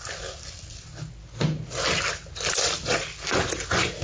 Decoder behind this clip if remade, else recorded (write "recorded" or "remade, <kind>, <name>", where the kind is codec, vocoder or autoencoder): recorded